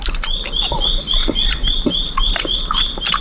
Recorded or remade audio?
recorded